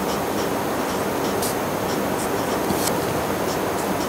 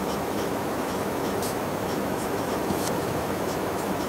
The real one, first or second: first